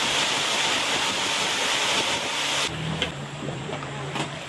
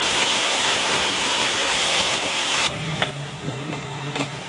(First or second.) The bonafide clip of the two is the first